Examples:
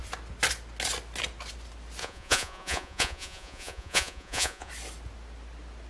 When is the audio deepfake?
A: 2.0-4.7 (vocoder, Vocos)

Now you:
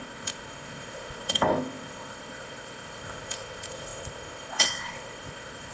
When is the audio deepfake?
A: 0.0-5.7 (codec, ZipCodec)

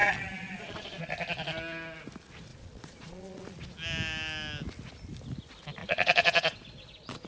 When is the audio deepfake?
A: 0.0-1.0 (vocoder, Vocos); 2.5-3.6; 5.8-7.3

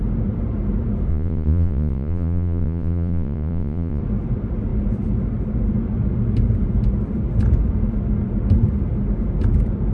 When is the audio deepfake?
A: 1.1-4.0 (vocoder, Vocos)